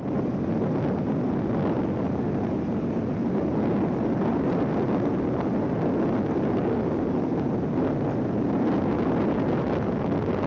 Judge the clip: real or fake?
real